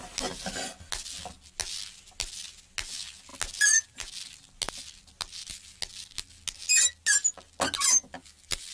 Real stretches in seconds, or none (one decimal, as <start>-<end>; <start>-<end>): 0.0-8.7